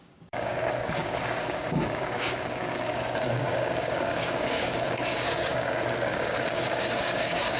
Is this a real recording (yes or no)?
no